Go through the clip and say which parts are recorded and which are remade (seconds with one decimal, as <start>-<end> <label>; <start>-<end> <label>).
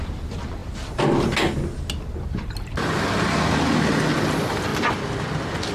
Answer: 0.0-5.7 recorded